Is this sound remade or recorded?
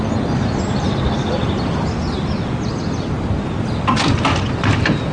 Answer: recorded